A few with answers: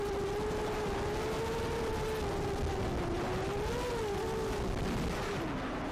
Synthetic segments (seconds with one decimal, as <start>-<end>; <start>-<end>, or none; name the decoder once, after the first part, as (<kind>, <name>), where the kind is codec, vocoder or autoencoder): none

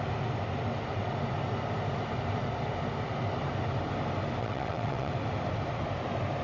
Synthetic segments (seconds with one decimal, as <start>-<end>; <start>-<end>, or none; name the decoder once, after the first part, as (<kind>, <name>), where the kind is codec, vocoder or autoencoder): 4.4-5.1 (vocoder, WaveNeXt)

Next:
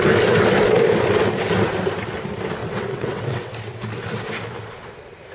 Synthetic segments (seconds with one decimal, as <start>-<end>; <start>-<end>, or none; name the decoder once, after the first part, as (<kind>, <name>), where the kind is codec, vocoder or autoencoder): 2.6-3.5 (vocoder, WaveNeXt)

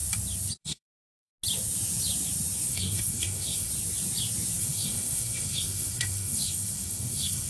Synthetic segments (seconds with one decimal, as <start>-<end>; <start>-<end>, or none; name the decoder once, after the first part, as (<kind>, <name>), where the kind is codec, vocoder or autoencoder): 0.6-1.3 (codec, SNAC); 2.7-3.7; 4.6-7.5

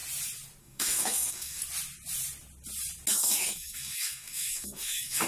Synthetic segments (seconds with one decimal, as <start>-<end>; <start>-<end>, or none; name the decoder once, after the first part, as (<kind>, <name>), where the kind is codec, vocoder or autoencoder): 0.6-1.6 (codec, DAC); 3.1-5.3